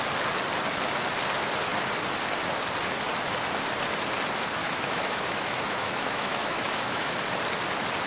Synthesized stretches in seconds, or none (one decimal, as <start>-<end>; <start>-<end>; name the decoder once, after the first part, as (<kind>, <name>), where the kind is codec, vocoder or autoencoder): 4.6-7.2 (autoencoder, DAC-VAE)